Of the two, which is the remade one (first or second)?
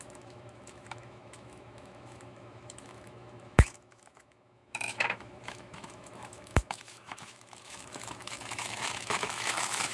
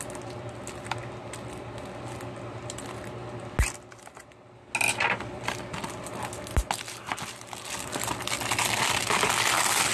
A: first